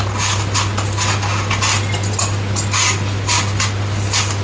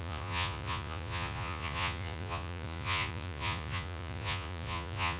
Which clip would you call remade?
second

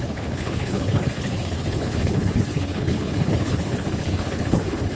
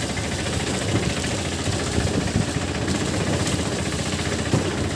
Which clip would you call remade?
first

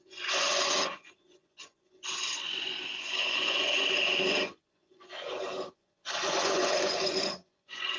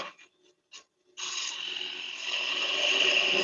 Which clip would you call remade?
first